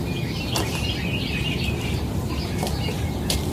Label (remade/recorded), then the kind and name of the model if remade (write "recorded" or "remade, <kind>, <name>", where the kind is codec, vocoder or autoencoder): recorded